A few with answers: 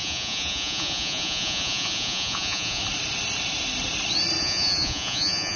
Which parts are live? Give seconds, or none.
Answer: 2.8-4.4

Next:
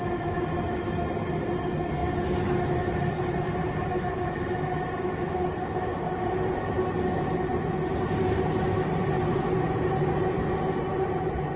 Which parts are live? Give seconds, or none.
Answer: 0.0-11.6

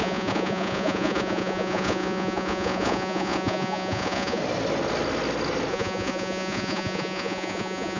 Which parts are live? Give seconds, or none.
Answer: 4.4-5.7

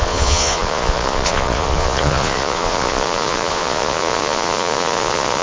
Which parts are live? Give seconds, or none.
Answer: none